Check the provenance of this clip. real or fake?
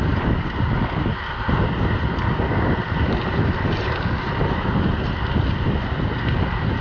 real